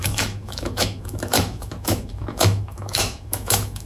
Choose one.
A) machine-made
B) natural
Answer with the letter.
A